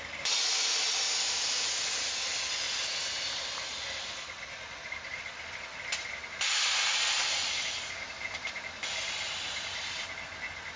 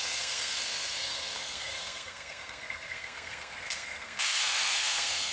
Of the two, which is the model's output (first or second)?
second